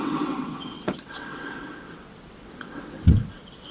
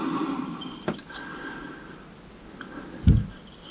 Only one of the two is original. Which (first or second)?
second